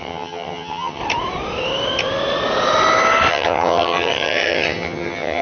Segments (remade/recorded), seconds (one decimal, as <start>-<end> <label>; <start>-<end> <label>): 0.0-1.0 remade; 1.0-3.3 recorded; 3.3-5.4 remade